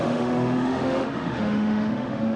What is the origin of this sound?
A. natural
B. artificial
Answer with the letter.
B